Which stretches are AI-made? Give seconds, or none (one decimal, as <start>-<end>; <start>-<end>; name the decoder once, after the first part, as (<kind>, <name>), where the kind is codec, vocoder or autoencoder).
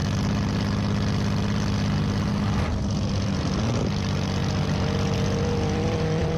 4.4-6.4 (vocoder, BigVGAN v2)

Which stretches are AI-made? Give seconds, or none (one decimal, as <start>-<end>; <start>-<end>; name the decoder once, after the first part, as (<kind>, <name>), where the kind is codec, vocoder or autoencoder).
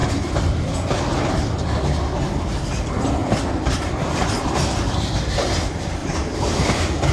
3.2-4.9 (vocoder, BigVGAN v2); 6.0-7.1